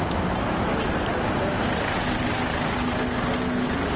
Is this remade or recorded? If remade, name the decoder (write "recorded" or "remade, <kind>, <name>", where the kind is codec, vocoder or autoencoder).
recorded